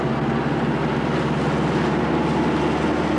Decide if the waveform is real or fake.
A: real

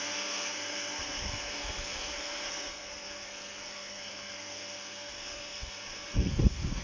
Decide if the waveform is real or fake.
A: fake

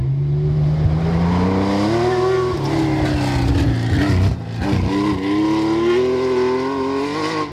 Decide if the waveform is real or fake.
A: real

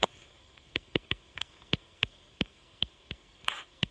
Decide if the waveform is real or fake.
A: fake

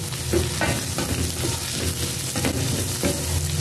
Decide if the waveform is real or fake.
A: real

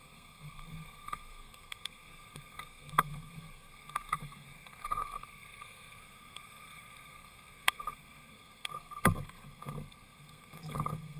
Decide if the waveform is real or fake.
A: fake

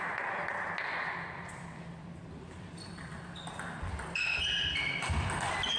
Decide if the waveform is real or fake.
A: real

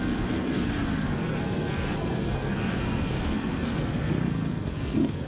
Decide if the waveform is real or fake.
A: fake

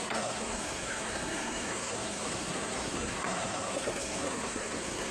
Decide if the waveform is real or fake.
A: fake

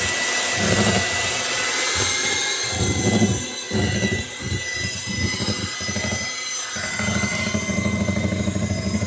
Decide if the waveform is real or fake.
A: real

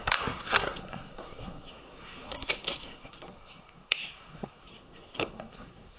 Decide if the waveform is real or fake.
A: fake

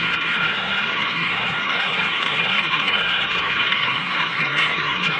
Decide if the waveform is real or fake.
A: fake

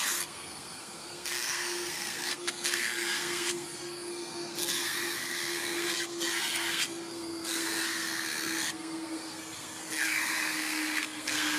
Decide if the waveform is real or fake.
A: fake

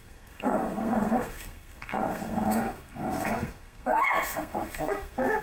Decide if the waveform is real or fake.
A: fake